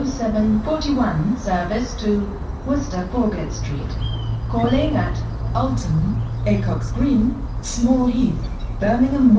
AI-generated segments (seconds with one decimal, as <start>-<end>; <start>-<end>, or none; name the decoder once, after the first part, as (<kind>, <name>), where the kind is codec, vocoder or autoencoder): none